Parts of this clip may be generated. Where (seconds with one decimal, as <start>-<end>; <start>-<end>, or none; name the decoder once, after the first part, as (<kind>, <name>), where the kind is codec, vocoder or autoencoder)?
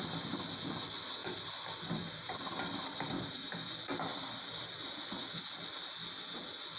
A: 1.2-3.3 (vocoder, BigVGAN v2)